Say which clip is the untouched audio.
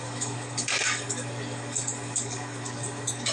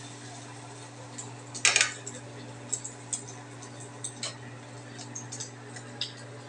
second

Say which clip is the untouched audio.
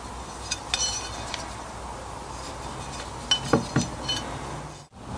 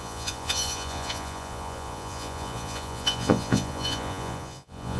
first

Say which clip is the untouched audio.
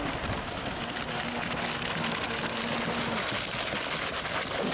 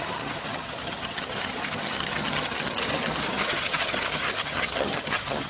first